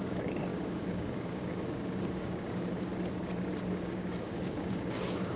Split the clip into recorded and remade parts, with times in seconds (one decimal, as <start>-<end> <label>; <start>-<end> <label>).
0.0-2.9 remade; 2.9-3.7 recorded; 3.7-5.4 remade